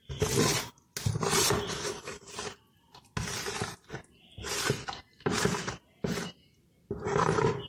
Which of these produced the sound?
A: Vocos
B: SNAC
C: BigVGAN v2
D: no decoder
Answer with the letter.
D